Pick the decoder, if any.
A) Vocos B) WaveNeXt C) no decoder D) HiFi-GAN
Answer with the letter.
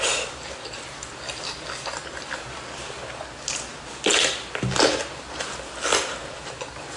C